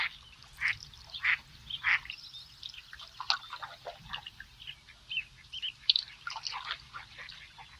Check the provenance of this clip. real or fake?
real